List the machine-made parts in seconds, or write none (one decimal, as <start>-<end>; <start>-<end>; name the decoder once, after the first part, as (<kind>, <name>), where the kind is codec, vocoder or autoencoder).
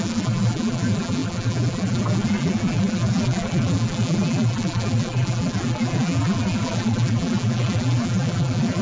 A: 0.0-8.8 (vocoder, BigVGAN v2)